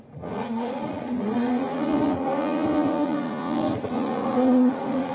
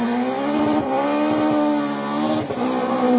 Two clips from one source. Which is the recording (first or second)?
second